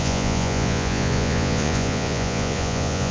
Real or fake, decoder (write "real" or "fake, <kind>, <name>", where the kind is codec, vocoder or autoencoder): fake, vocoder, Vocos